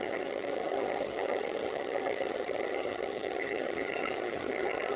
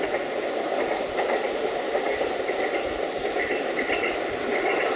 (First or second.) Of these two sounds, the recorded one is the second